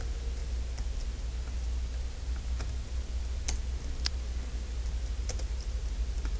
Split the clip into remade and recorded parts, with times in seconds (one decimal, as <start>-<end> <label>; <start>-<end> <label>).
0.0-6.4 recorded